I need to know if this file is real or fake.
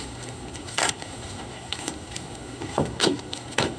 fake